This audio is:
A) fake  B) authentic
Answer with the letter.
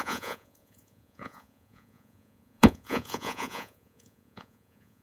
A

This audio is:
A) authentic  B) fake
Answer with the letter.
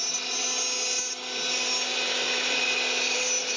A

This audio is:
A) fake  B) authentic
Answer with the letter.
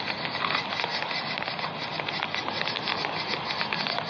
B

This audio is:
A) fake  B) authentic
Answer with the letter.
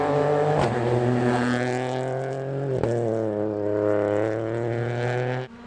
B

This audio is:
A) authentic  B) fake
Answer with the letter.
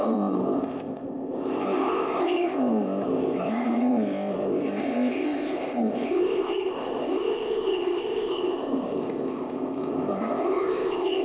B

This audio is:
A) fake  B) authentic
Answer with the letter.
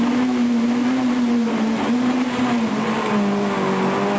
B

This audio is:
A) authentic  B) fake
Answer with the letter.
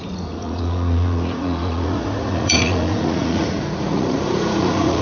B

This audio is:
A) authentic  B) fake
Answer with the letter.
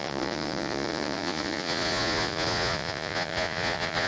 B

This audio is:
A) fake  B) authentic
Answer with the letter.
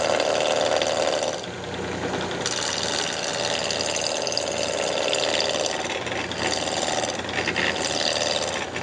B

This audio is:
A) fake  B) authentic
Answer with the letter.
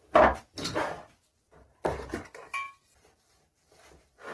B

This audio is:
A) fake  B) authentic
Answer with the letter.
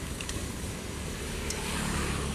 A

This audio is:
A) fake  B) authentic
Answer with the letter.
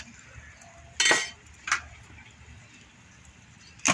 B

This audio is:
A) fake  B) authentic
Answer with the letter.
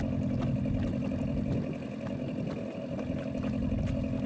B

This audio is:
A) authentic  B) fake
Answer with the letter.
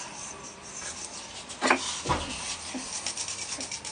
A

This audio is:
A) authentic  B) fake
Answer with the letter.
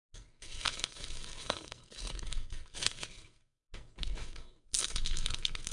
B